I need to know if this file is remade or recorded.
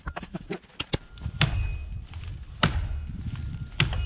recorded